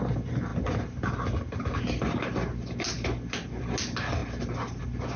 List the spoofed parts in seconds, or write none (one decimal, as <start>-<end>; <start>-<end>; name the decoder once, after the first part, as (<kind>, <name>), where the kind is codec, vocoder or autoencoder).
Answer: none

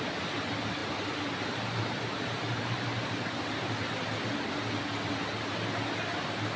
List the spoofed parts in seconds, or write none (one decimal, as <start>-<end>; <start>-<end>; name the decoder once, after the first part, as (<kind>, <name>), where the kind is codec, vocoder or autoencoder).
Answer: none

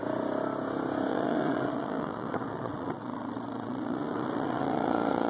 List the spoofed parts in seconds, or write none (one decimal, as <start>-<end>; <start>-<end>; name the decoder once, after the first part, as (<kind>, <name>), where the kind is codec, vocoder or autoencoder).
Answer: 1.1-5.3 (vocoder, Vocos)

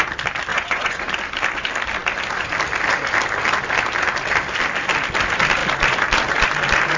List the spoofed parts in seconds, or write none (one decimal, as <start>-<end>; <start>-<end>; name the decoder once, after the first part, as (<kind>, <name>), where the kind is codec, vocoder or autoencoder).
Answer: 0.5-1.1 (vocoder, Vocos)

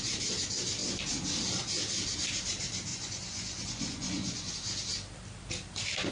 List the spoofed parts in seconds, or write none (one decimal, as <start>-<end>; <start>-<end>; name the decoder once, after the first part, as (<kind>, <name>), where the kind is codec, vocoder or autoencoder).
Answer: 2.9-4.5 (vocoder, Vocos)

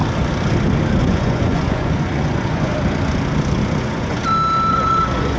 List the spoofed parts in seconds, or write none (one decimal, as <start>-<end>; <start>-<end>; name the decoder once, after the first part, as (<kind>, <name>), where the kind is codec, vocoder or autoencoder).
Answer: 1.0-2.7 (vocoder, Vocos); 3.8-4.2; 4.7-5.4

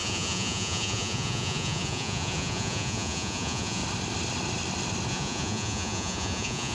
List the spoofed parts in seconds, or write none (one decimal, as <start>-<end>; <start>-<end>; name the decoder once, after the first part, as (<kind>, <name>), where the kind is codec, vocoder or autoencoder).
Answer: 0.0-3.8 (vocoder, Vocos); 5.1-6.7